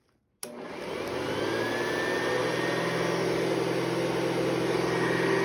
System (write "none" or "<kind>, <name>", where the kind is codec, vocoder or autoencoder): none